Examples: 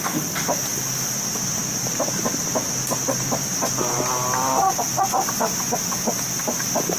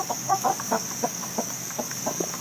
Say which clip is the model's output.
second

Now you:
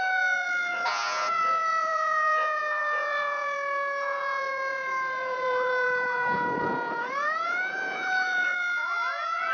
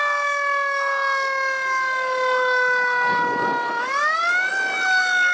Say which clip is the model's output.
first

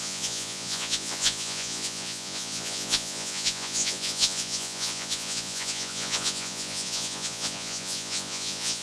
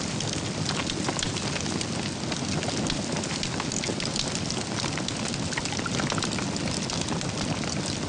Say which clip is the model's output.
first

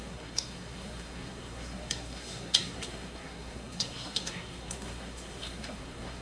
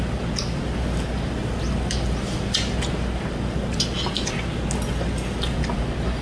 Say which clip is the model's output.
first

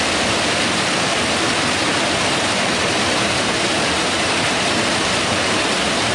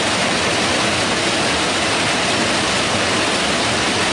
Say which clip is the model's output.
first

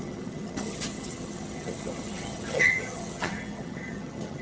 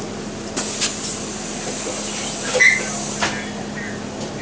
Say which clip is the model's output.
first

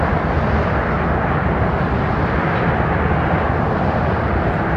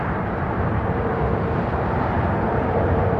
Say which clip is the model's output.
second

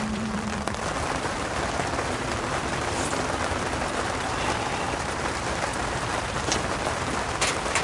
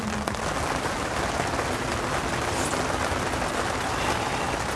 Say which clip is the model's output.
first